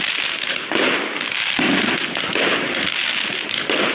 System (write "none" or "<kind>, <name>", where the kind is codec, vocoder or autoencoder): none